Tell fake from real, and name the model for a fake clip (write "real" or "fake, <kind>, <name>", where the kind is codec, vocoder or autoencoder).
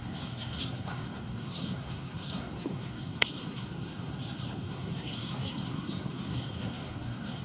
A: fake, codec, SNAC